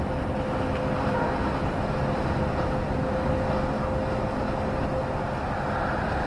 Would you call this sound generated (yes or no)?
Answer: no